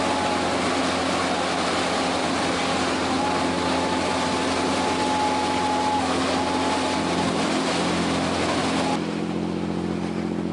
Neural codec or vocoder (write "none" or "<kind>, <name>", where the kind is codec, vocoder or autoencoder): none